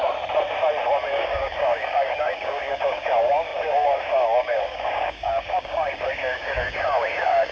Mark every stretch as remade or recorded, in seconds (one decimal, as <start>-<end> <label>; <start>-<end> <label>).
0.0-1.1 recorded; 1.1-7.5 remade

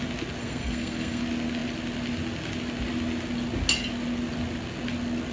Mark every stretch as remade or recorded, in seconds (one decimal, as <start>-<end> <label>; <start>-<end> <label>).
0.0-0.4 recorded; 0.4-1.2 remade; 1.2-5.3 recorded

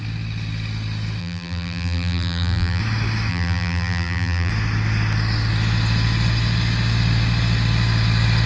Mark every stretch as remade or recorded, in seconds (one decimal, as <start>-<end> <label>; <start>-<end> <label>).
0.0-1.2 recorded; 1.2-2.8 remade; 2.8-3.3 recorded; 3.3-4.5 remade; 4.5-8.5 recorded

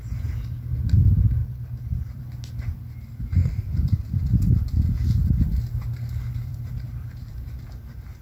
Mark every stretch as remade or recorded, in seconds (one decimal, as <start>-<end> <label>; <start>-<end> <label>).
0.0-1.4 recorded; 1.4-2.2 remade; 2.2-3.4 recorded; 3.4-4.2 remade; 4.2-6.5 recorded; 6.5-7.3 remade; 7.3-8.2 recorded

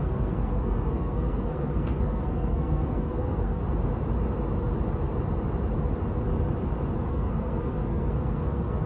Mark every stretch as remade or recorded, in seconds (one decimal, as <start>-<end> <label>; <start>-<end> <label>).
0.0-3.6 remade; 3.6-7.1 recorded; 7.1-8.9 remade

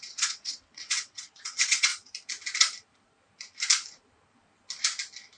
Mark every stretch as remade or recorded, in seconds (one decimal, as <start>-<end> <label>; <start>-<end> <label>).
0.0-1.9 remade; 1.9-5.4 recorded

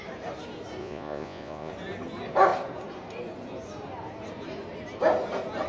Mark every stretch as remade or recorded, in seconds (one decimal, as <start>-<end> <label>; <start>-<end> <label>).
0.0-0.8 recorded; 0.8-1.7 remade; 1.7-5.7 recorded